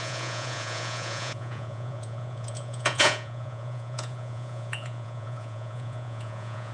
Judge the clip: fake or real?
fake